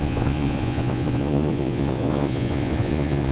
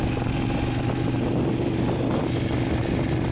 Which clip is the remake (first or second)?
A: first